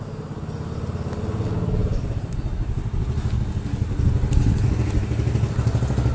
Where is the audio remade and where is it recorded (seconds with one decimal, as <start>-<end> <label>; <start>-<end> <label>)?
0.0-6.1 recorded